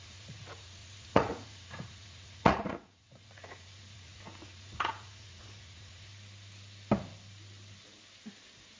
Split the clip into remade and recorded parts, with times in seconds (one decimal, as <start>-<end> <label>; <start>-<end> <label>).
0.0-6.1 remade; 6.1-8.8 recorded